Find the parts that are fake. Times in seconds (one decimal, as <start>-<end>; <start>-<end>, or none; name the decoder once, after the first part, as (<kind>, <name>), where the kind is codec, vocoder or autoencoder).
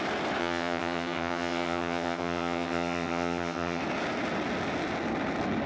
0.4-3.8 (vocoder, HiFi-GAN)